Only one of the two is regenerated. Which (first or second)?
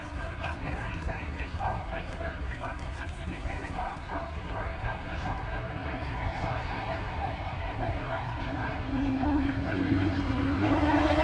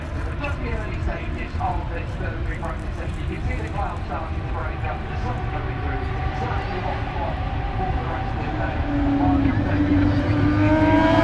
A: first